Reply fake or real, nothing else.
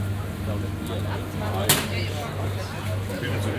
real